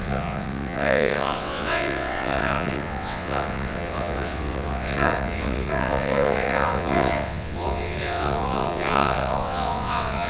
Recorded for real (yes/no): no